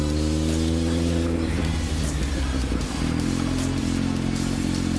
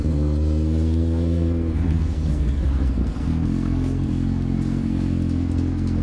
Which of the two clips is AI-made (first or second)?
second